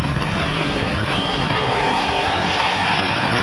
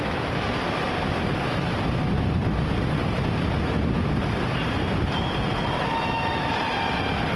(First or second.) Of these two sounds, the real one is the second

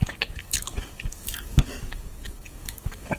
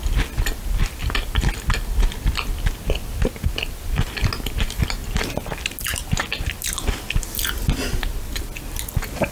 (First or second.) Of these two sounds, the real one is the second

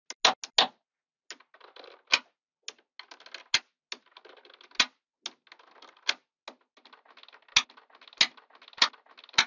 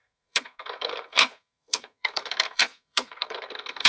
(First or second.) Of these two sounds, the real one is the first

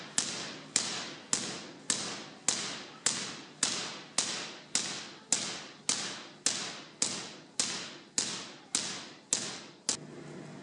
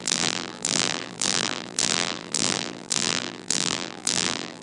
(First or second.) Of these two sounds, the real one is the first